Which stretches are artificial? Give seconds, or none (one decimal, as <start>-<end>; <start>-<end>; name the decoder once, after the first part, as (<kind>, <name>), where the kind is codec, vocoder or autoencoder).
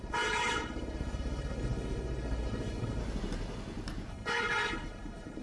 0.0-3.0 (codec, HILCodec); 4.1-5.4